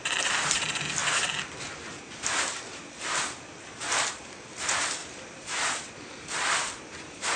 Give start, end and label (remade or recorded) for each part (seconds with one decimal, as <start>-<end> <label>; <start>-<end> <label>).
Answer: 0.0-1.0 remade; 1.0-4.1 recorded; 4.1-7.4 remade

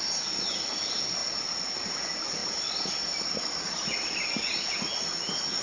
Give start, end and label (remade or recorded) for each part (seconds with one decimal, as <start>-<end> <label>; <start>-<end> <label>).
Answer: 0.0-5.6 recorded

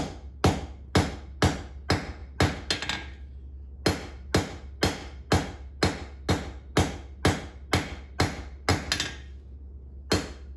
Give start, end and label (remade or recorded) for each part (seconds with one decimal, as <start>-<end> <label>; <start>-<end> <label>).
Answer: 0.0-10.6 recorded

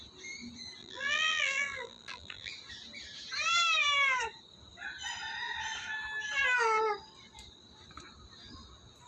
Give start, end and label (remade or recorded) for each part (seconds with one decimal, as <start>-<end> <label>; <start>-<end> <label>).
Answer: 0.0-0.8 recorded; 0.8-2.5 remade; 2.5-9.1 recorded